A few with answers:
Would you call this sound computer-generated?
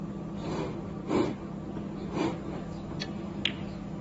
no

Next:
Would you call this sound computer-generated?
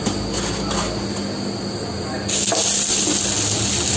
no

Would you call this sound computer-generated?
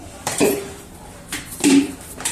yes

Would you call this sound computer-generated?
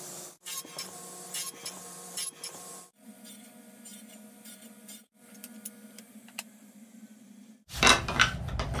no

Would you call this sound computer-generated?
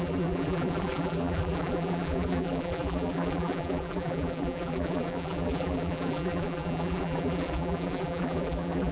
yes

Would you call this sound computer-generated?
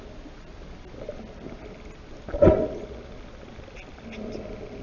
no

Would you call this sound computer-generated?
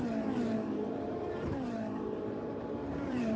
yes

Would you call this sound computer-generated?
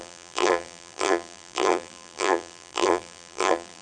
yes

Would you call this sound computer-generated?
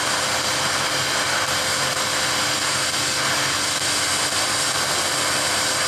no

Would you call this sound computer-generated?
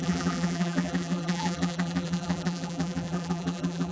yes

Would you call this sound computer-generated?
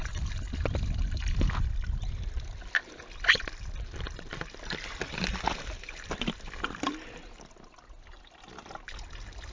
no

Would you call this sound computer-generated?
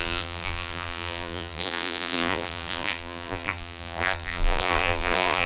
yes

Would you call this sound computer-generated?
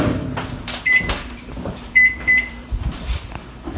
yes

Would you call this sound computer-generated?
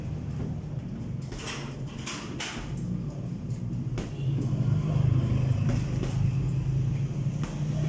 no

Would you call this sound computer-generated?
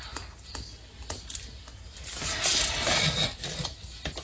no